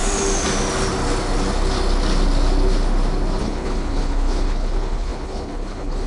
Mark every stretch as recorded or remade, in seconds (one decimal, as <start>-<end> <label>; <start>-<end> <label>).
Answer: 0.0-3.4 recorded; 3.4-6.1 remade